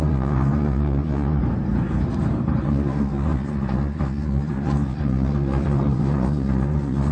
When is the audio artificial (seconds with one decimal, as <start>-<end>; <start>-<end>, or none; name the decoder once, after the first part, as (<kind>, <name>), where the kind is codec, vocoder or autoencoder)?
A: 0.0-1.4 (vocoder, Vocos); 2.6-7.1